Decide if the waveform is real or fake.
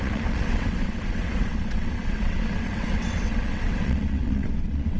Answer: fake